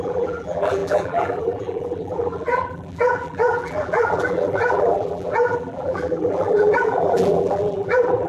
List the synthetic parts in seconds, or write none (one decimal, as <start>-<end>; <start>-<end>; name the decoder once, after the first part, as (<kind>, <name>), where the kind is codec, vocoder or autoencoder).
0.0-8.3 (vocoder, BigVGAN v2)